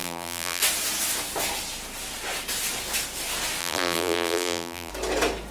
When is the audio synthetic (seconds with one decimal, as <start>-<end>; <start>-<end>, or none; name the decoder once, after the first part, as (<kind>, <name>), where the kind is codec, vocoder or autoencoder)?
0.0-0.6 (vocoder, BigVGAN v2); 3.6-4.9